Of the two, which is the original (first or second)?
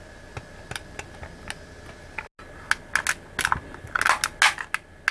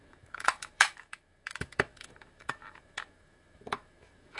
first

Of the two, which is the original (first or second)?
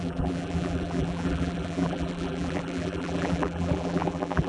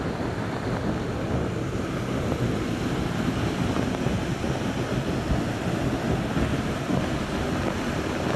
second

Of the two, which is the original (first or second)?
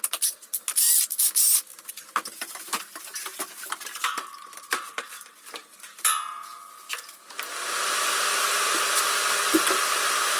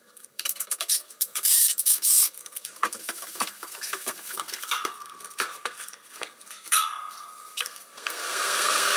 first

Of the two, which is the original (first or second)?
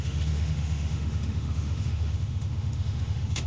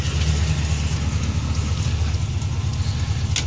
second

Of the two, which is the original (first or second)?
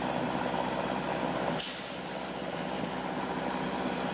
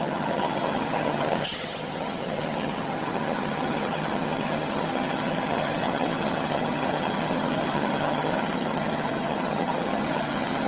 first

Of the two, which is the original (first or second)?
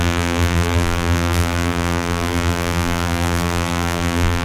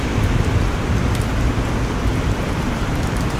second